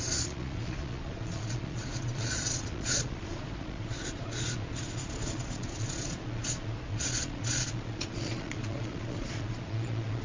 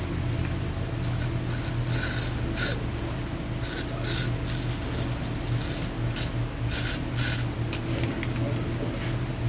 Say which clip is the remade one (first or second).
first